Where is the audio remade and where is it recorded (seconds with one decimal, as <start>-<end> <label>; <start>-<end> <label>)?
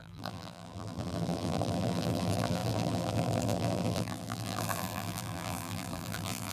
0.0-6.5 remade